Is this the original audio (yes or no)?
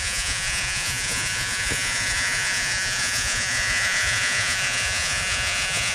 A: no